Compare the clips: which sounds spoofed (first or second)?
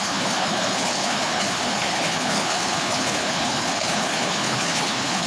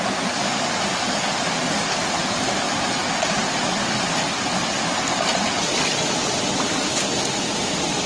first